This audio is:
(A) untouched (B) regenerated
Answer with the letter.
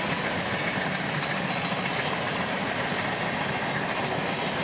A